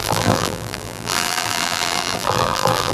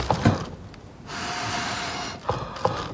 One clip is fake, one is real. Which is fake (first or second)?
first